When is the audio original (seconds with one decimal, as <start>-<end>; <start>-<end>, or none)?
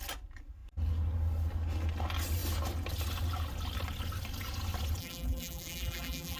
0.0-5.0